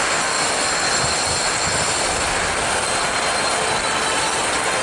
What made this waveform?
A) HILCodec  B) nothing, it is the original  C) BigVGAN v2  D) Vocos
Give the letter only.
B